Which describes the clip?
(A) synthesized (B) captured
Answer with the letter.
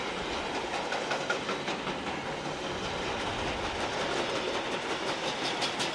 B